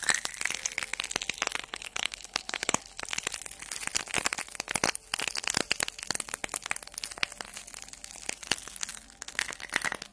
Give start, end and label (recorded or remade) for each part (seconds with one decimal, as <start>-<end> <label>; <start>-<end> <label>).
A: 0.0-1.7 recorded; 1.7-2.8 remade; 2.8-10.1 recorded